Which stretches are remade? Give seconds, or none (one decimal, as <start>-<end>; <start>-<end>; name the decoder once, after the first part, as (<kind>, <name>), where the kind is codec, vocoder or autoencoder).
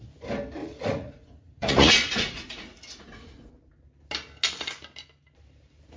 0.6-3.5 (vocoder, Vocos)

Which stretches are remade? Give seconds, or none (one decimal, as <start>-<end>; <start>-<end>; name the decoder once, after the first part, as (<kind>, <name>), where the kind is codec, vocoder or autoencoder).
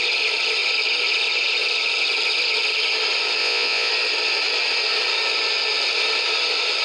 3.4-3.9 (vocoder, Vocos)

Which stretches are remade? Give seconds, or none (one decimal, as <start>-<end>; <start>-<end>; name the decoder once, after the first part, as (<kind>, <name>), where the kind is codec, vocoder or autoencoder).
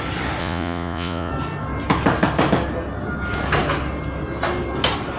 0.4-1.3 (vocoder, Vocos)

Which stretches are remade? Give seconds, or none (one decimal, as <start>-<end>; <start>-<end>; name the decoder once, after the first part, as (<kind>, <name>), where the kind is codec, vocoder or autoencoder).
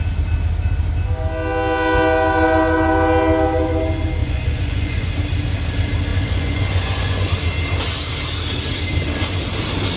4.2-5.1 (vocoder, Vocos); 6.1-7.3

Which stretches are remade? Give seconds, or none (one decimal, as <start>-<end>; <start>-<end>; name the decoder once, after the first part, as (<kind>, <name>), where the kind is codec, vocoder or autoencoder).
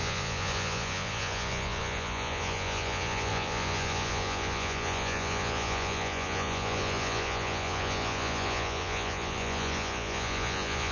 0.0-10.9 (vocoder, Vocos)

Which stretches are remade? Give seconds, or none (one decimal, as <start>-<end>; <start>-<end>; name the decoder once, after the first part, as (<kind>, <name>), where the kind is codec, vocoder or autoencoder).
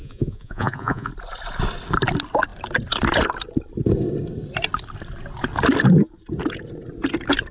0.0-1.1 (vocoder, Vocos)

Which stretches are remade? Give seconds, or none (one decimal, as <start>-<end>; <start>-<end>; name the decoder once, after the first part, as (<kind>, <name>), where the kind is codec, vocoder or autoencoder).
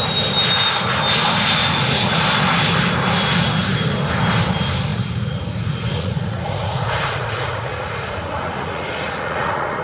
1.6-2.2 (vocoder, Vocos); 4.9-9.8